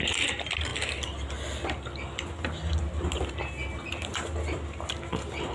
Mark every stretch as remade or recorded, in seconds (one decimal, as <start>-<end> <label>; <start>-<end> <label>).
0.0-5.5 recorded